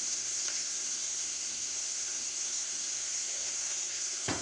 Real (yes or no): no